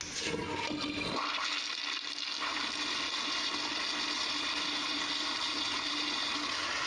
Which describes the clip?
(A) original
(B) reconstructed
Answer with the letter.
A